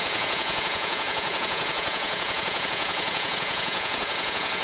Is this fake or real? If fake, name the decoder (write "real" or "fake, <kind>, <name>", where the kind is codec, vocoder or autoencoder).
fake, vocoder, Vocos